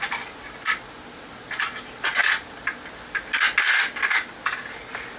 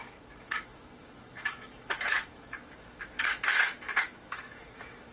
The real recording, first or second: first